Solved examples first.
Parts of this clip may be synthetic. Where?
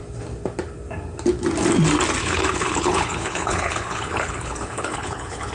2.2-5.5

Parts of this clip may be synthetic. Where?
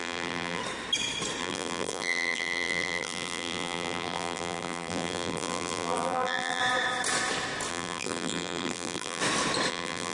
0.0-0.6; 1.4-6.6; 7.7-9.2; 9.7-10.1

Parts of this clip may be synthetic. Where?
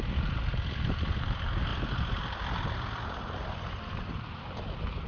1.7-5.1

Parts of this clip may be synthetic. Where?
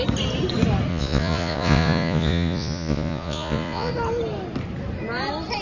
0.9-3.9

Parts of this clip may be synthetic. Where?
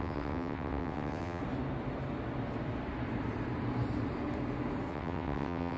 0.0-1.4; 4.9-5.8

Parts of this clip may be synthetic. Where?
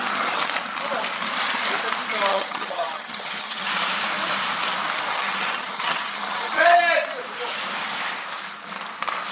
2.3-3.7; 5.1-6.8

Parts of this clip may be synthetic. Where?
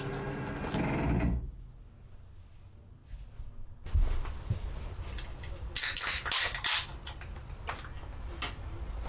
none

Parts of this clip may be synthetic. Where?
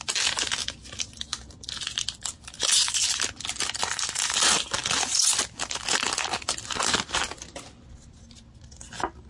none